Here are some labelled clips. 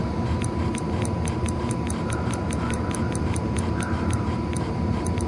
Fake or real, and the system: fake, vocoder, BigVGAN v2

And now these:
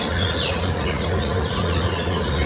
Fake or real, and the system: fake, vocoder, Vocos